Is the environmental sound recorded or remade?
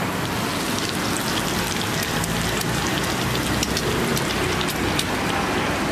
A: recorded